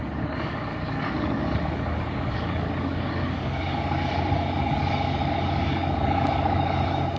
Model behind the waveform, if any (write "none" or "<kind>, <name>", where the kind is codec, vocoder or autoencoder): codec, DAC